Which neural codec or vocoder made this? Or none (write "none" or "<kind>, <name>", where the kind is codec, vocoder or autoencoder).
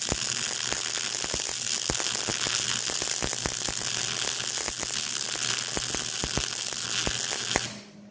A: none